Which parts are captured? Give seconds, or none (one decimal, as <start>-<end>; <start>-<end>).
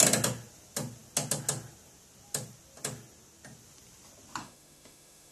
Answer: 0.0-4.4